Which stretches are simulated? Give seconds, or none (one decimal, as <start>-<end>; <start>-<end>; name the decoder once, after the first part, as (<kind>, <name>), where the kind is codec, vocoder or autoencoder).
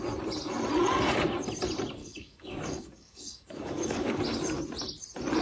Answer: 2.0-4.2 (codec, DAC)